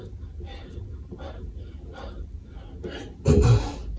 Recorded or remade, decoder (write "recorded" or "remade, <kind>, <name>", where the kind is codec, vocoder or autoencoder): recorded